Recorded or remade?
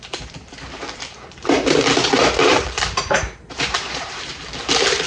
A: remade